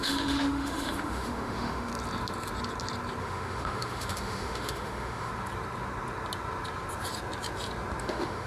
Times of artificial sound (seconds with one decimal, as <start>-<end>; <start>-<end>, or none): 0.0-1.9; 3.2-5.3; 8.0-8.5